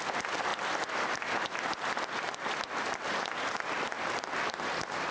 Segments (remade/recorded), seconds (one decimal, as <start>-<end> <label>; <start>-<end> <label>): 0.0-5.1 recorded